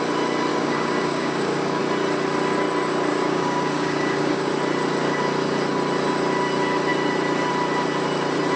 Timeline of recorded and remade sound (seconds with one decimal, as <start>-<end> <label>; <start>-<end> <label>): 0.0-0.5 recorded; 0.5-1.8 remade; 1.8-3.1 recorded; 3.1-4.5 remade; 4.5-8.6 recorded